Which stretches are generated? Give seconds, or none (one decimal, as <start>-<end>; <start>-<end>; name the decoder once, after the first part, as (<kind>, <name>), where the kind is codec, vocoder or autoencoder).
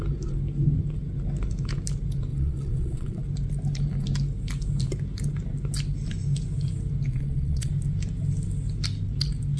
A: 2.3-3.2 (vocoder, WaveNeXt); 7.1-7.7